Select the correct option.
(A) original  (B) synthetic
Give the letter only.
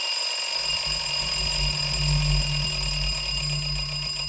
A